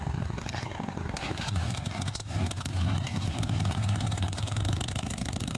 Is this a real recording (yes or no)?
no